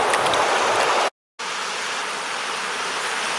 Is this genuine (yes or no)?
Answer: yes